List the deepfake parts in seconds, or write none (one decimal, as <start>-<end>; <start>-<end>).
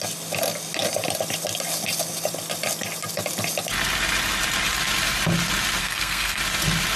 5.8-6.4